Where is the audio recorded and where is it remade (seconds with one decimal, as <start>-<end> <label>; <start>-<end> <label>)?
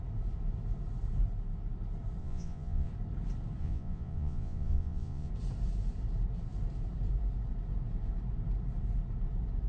0.0-2.2 recorded; 2.2-2.9 remade; 2.9-3.6 recorded; 3.6-5.3 remade; 5.3-9.7 recorded